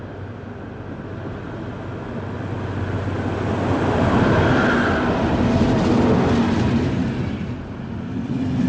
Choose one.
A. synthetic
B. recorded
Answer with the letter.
B